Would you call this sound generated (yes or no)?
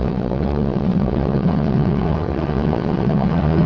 yes